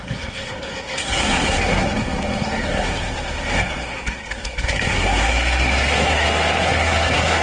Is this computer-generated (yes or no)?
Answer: yes